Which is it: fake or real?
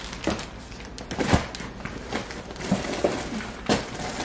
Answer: real